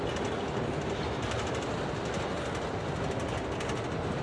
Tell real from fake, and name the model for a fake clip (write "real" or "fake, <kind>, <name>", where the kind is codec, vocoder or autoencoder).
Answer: real